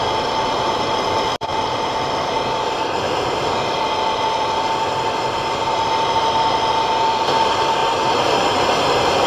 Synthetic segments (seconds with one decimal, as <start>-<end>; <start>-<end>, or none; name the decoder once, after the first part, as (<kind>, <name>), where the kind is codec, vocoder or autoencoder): 0.0-9.3 (vocoder, BigVGAN v2)